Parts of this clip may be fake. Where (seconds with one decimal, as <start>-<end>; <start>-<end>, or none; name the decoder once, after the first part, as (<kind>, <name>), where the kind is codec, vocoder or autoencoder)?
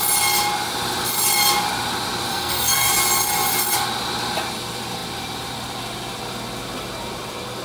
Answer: 2.3-2.9 (codec, SNAC)